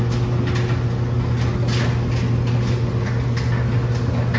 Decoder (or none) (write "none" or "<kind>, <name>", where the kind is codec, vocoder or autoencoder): none